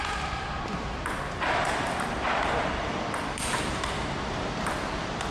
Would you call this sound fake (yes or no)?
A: yes